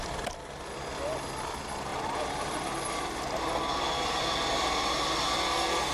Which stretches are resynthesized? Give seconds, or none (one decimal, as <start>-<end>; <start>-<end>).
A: 1.9-2.9